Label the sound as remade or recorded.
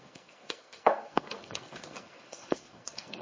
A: remade